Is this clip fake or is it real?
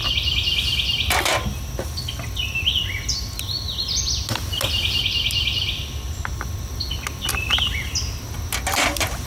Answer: real